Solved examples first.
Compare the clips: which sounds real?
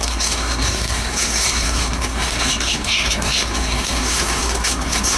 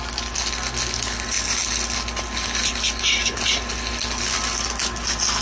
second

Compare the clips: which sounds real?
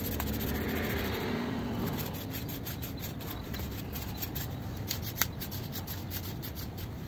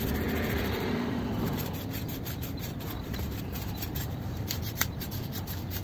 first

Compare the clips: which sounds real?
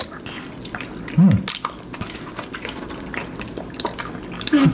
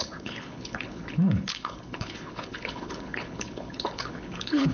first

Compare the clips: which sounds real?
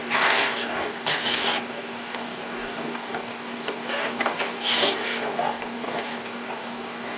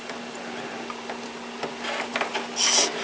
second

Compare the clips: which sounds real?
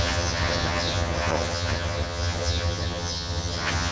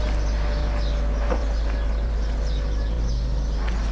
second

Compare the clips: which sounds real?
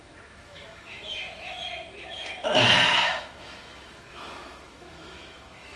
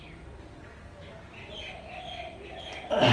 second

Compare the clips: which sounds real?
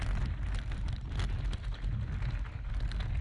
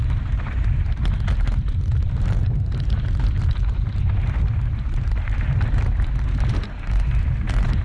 first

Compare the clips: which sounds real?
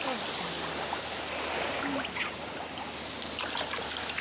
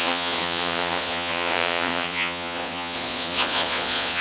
first